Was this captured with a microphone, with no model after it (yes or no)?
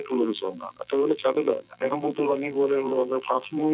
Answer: no